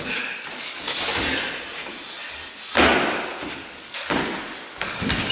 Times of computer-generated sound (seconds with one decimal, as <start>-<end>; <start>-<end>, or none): 0.0-1.1; 3.5-4.2; 4.7-5.3